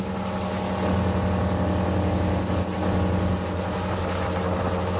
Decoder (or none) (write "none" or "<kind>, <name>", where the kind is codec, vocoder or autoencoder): none